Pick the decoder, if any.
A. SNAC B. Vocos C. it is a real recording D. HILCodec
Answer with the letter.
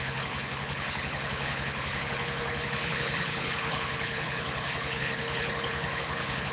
D